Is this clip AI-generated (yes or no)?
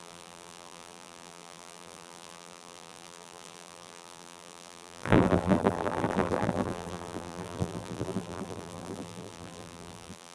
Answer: yes